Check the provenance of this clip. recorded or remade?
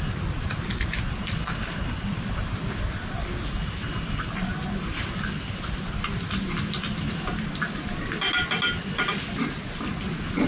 recorded